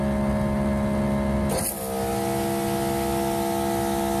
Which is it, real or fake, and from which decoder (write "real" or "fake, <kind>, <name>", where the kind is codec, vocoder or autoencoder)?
real